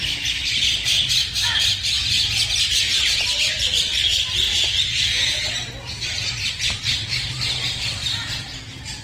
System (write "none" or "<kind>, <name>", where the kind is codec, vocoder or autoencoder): none